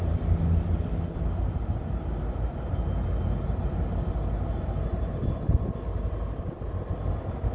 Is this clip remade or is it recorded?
recorded